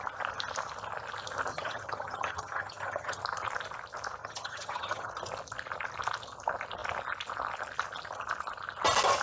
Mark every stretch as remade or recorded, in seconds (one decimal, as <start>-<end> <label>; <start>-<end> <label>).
0.0-1.5 recorded; 1.5-3.2 remade; 3.2-4.2 recorded; 4.2-5.1 remade; 5.1-9.2 recorded

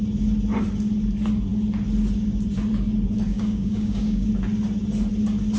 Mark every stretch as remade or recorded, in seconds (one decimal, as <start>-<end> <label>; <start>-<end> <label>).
0.0-3.3 recorded; 3.3-4.3 remade; 4.3-5.6 recorded

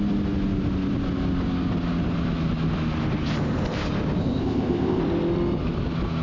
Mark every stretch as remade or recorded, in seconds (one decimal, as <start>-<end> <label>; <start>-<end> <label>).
0.0-4.2 recorded; 4.2-5.0 remade; 5.0-6.2 recorded

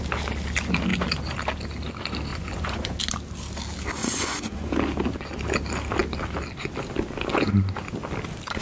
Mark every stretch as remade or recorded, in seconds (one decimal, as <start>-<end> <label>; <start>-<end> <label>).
0.0-2.3 recorded; 2.3-2.9 remade; 2.9-4.0 recorded; 4.0-4.7 remade; 4.7-8.6 recorded

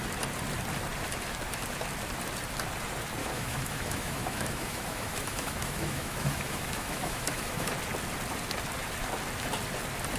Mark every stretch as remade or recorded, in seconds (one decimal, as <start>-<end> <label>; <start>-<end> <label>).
0.0-3.2 recorded; 3.2-7.7 remade; 7.7-10.2 recorded

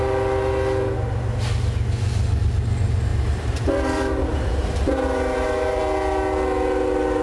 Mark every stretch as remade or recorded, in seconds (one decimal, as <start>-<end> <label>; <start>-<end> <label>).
0.0-3.1 recorded; 3.1-5.8 remade; 5.8-7.2 recorded